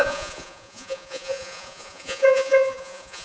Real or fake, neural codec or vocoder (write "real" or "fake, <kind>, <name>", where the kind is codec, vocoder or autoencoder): fake, vocoder, Vocos